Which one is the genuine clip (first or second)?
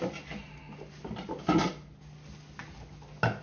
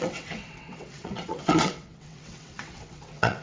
first